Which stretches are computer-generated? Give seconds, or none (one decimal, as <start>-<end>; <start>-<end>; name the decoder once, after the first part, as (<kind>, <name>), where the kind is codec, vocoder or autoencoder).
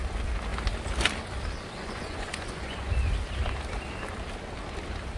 1.8-2.9 (vocoder, Vocos)